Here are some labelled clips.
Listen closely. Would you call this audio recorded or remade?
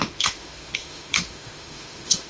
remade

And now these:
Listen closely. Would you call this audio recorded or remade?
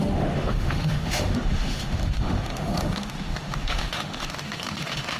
remade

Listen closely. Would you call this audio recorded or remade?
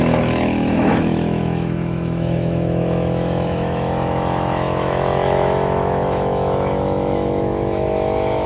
remade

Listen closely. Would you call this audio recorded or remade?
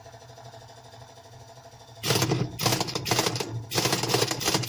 recorded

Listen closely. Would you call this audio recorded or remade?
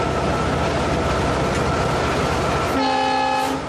recorded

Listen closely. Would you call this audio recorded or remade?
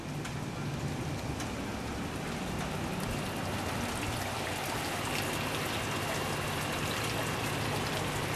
recorded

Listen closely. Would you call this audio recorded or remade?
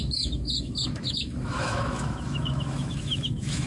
remade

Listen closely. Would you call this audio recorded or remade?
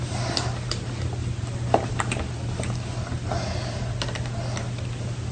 recorded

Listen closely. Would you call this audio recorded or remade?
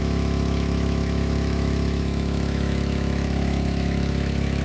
remade